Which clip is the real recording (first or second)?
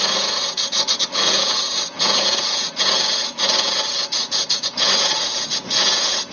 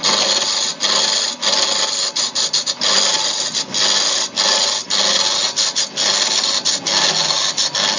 second